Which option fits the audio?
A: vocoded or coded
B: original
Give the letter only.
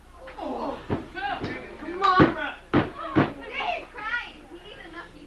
B